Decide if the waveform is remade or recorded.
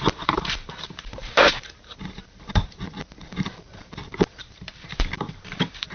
remade